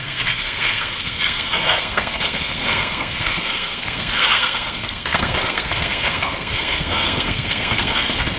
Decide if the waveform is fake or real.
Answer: fake